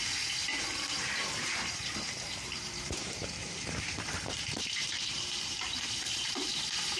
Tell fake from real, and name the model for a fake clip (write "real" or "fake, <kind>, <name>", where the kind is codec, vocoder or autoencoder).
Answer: fake, vocoder, BigVGAN v2